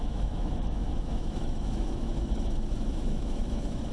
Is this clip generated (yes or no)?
yes